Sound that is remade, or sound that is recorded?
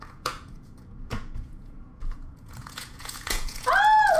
remade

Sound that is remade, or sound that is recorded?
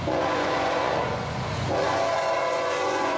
remade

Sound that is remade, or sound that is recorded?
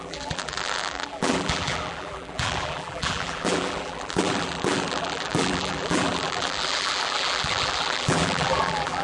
remade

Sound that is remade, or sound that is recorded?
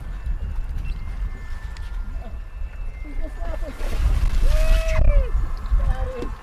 recorded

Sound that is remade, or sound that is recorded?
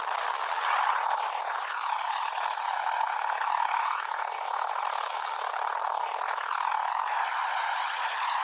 recorded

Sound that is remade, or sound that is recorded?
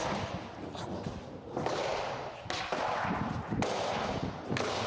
recorded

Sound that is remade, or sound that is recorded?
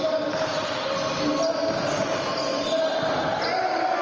recorded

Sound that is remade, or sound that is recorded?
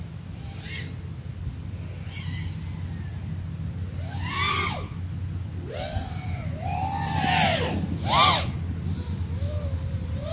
recorded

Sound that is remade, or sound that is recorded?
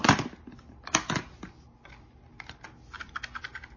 recorded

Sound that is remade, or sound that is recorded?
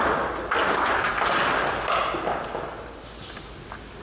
recorded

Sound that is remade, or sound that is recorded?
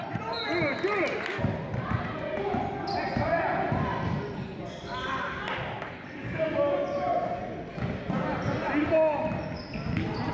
recorded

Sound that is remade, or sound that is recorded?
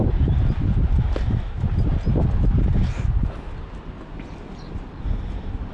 recorded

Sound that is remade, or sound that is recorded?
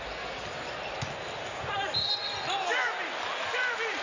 recorded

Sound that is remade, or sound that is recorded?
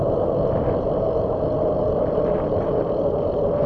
recorded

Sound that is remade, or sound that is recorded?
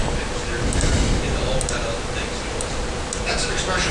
recorded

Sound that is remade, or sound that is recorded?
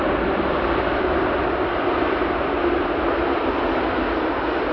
recorded